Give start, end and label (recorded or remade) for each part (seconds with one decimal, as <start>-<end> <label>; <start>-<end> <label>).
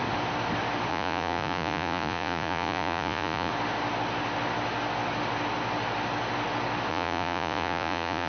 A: 0.0-0.9 recorded; 0.9-3.5 remade; 3.5-6.9 recorded; 6.9-8.3 remade